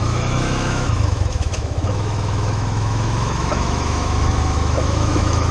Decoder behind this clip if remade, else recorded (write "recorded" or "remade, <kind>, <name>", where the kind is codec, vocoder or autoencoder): remade, autoencoder, DAC-VAE